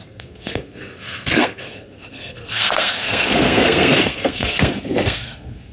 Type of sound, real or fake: fake